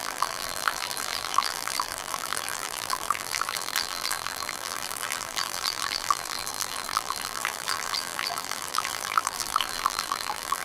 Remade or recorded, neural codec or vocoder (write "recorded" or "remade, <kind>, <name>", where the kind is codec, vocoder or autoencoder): remade, vocoder, BigVGAN v2